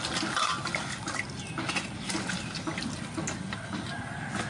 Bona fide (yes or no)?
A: yes